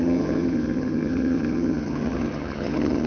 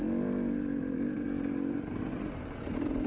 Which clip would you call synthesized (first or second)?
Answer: first